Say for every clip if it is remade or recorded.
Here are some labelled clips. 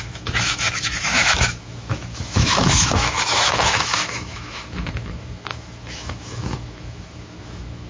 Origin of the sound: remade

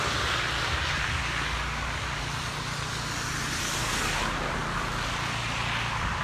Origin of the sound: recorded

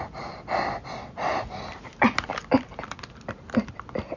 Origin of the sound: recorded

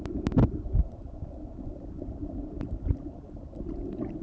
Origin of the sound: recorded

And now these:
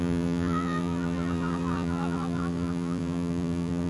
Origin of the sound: remade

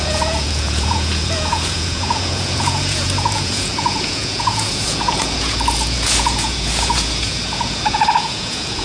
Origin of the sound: remade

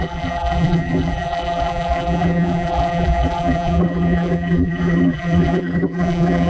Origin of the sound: remade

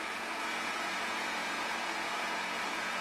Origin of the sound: remade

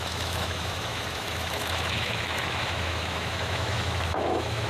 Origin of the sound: remade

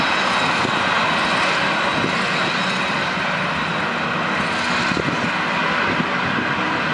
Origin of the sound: recorded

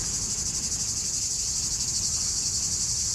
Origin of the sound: recorded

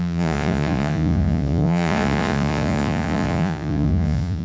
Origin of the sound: remade